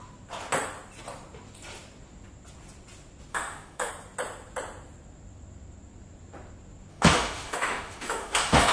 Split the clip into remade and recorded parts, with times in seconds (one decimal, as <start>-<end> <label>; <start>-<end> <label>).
0.0-3.3 recorded; 3.3-3.9 remade; 3.9-6.9 recorded; 6.9-8.7 remade